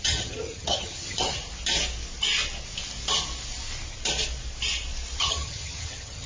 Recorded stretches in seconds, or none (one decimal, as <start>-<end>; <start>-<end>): 1.4-5.2